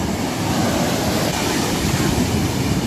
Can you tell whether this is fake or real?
fake